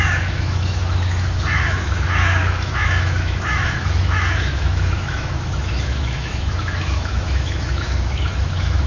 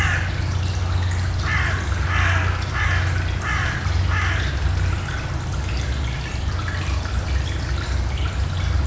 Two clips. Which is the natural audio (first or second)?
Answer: second